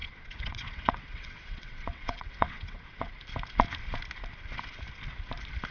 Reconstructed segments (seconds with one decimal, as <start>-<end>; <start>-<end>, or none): 0.0-3.1